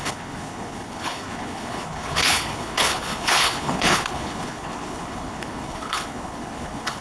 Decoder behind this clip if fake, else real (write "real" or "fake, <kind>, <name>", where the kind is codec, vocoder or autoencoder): fake, codec, HILCodec